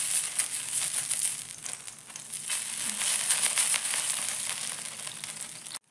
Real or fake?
real